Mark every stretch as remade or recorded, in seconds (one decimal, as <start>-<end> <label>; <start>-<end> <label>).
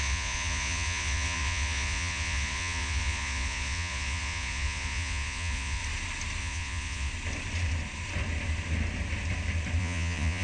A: 0.0-5.8 remade; 5.8-6.4 recorded; 6.4-7.1 remade; 7.1-9.8 recorded; 9.8-10.4 remade